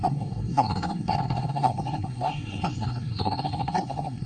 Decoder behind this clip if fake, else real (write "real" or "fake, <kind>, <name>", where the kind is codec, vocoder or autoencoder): fake, codec, SNAC